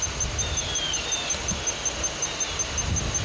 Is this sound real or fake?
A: real